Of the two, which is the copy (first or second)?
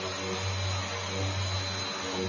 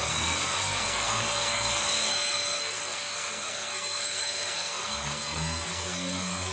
second